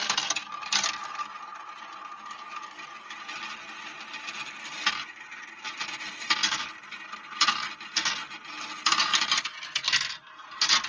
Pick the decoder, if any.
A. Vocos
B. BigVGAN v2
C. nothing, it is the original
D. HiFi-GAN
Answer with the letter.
C